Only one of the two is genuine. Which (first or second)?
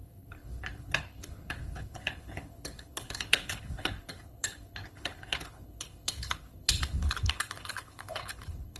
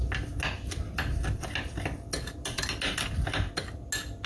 second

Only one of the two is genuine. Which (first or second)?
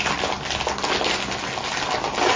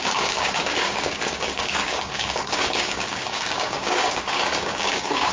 first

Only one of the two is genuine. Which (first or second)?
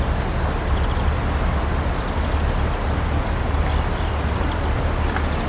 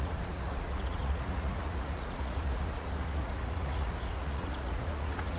first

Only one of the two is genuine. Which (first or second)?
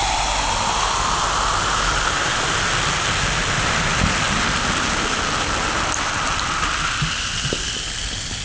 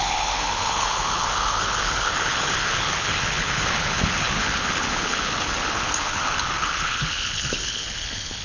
first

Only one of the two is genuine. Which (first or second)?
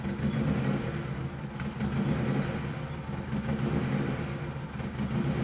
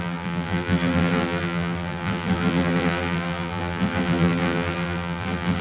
first